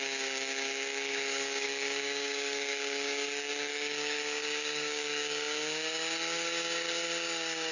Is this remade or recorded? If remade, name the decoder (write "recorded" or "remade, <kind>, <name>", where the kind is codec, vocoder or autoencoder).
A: remade, codec, DAC